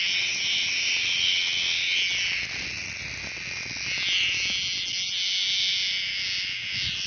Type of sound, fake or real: real